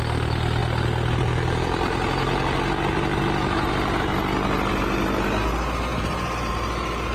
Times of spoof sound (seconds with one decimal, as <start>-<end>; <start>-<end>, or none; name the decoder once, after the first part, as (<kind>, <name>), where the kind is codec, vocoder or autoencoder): none